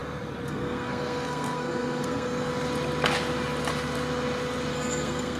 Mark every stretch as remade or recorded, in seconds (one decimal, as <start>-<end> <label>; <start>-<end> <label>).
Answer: 0.0-0.5 recorded; 0.5-2.5 remade; 2.5-4.7 recorded; 4.7-5.4 remade